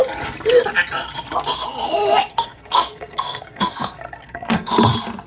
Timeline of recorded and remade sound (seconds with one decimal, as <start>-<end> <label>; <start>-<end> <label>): 0.0-2.3 recorded; 2.3-4.7 remade; 4.7-5.3 recorded